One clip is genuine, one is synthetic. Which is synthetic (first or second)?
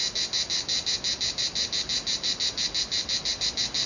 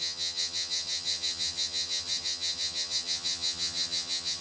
second